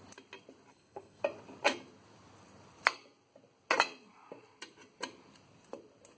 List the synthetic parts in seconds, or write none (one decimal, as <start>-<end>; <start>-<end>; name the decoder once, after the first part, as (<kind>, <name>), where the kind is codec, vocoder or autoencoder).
0.7-1.2 (codec, SNAC)